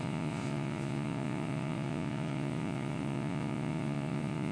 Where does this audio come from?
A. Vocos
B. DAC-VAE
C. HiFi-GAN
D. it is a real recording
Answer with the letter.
A